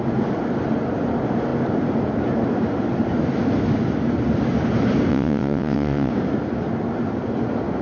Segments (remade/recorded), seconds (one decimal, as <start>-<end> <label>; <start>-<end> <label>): 0.0-5.1 recorded; 5.1-6.1 remade; 6.1-7.8 recorded